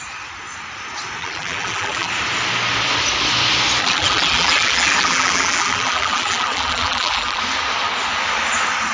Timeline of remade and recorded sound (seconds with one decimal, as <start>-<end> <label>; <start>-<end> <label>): 0.0-1.2 recorded; 1.2-2.1 remade; 2.1-3.8 recorded; 3.8-7.4 remade; 7.4-8.9 recorded